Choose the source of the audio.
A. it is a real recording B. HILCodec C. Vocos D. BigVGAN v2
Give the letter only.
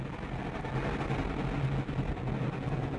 A